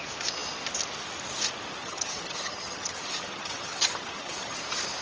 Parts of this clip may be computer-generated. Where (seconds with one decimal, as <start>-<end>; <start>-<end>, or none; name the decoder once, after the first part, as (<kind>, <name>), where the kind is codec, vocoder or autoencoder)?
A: 1.8-4.6 (vocoder, HiFi-GAN)